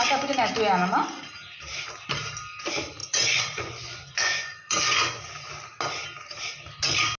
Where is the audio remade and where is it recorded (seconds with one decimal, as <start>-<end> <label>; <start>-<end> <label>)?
0.0-3.0 recorded; 3.0-5.2 remade; 5.2-7.2 recorded